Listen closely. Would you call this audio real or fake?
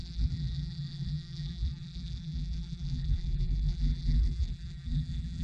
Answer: fake